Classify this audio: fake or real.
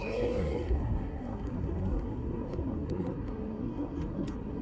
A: fake